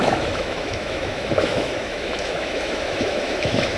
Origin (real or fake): fake